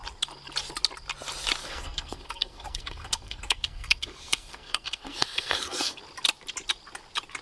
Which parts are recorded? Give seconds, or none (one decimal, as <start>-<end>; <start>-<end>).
0.0-1.6; 6.0-7.4

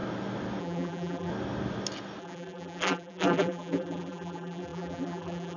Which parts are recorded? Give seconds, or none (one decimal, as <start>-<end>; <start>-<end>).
0.0-0.6; 1.3-2.2

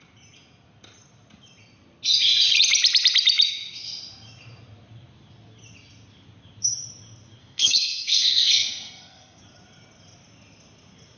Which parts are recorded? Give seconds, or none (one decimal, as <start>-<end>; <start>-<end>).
0.0-7.4; 9.4-11.2

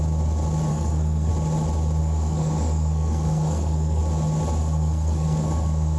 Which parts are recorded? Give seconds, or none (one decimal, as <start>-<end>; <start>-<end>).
0.0-0.7; 1.3-2.0; 4.0-4.6

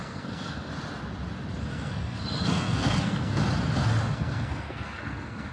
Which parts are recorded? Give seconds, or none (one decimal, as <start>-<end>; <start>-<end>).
0.7-1.6; 3.4-4.1

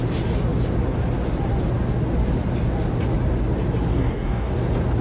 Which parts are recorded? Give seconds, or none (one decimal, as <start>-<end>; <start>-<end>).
0.0-3.9; 4.5-5.0